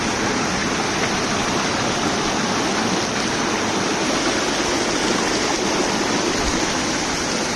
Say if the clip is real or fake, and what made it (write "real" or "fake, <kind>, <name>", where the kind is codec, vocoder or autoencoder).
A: real